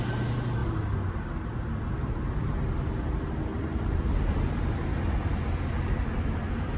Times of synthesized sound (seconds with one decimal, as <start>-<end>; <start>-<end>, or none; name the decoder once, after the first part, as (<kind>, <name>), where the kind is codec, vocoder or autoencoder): none